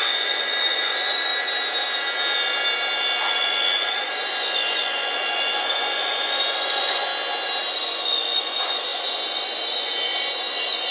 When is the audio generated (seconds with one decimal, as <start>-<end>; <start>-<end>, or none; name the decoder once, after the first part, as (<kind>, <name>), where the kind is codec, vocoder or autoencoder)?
0.0-1.3 (vocoder, Vocos); 3.3-7.1; 7.7-10.9